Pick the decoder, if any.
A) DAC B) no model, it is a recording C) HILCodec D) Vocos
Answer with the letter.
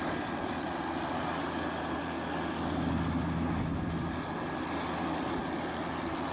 B